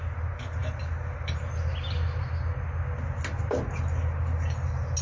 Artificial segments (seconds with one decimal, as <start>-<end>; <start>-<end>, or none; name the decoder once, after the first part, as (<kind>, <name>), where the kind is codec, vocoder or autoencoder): none